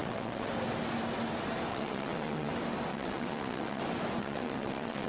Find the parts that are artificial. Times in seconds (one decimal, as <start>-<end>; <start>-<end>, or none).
0.0-0.5; 1.7-2.5; 2.9-3.8; 4.2-5.1

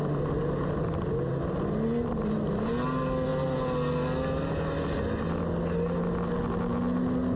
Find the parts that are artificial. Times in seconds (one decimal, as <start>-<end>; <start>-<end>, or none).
none